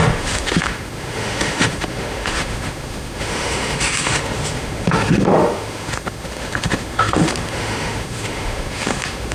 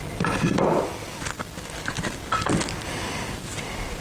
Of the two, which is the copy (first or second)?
first